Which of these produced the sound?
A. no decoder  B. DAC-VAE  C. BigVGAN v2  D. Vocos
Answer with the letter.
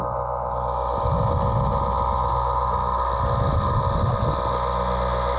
A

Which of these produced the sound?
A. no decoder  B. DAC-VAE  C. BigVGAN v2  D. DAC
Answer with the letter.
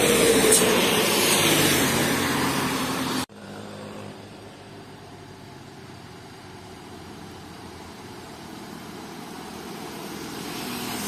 C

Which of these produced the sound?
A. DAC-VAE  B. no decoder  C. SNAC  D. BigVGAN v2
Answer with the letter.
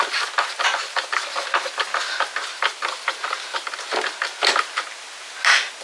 B